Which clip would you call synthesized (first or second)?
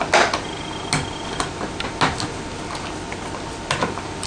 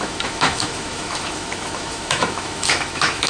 second